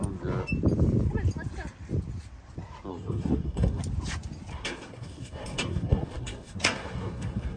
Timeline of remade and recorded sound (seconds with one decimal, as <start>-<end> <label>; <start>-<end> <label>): 0.0-2.9 recorded; 2.9-3.8 remade; 3.8-4.5 recorded; 4.5-7.6 remade